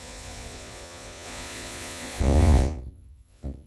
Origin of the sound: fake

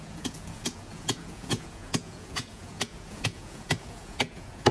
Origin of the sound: fake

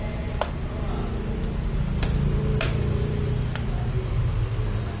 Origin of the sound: real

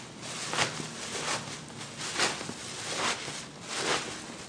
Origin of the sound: real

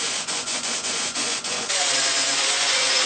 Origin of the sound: fake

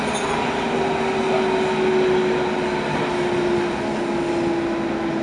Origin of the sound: real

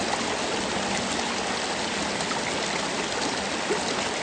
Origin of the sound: real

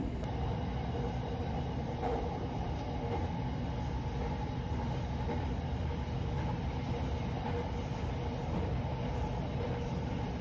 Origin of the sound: real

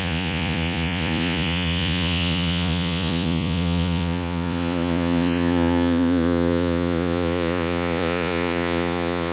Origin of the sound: fake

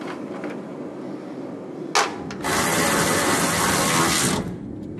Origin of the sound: real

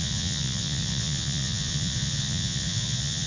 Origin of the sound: fake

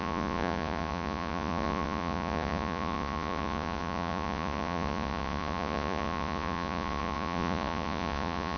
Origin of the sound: fake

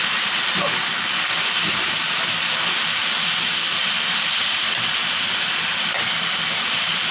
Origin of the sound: real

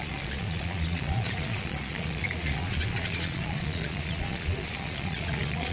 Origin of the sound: fake